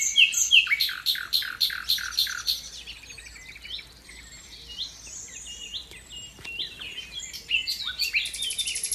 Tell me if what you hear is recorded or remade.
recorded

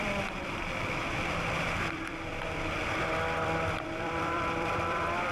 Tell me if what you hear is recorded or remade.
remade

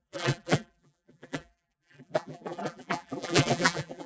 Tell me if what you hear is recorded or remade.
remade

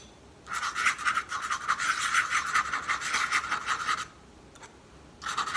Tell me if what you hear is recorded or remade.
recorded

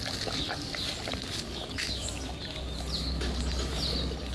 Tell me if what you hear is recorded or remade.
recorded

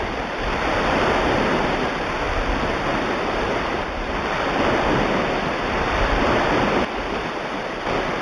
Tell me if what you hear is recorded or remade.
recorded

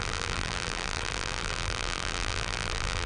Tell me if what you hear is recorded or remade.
remade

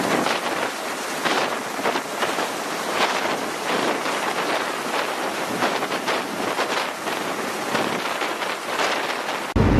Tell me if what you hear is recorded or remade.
recorded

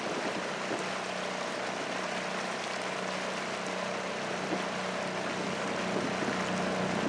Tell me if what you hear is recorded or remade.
recorded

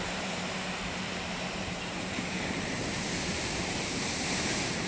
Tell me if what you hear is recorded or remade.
remade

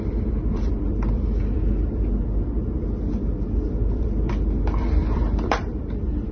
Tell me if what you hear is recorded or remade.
remade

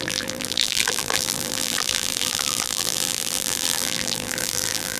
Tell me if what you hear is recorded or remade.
remade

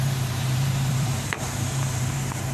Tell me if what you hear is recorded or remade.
remade